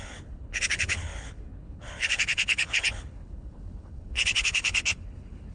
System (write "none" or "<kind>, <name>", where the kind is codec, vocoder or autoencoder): codec, HILCodec